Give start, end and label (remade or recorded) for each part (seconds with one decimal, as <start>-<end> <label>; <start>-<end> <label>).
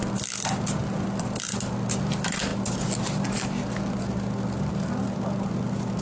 0.0-0.8 recorded; 0.8-1.5 remade; 1.5-6.0 recorded